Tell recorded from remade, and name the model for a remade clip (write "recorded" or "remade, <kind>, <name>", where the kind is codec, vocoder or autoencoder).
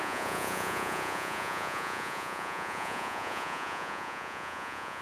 remade, vocoder, Vocos